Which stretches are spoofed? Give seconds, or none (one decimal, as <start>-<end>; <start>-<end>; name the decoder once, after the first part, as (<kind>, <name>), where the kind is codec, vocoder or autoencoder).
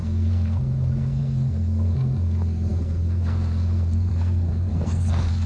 0.0-5.5 (codec, SNAC)